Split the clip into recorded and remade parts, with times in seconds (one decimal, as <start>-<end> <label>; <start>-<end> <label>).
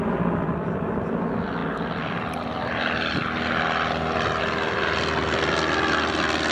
0.0-6.5 recorded